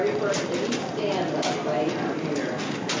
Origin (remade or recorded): recorded